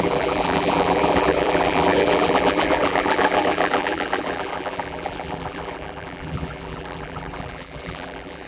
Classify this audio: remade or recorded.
remade